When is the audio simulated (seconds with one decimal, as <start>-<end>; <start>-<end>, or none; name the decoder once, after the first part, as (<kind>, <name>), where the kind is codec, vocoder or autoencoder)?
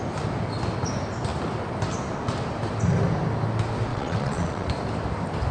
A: 3.9-4.7 (vocoder, WaveNeXt)